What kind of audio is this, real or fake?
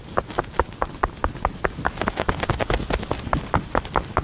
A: real